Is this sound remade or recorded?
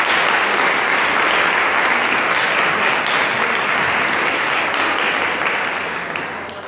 recorded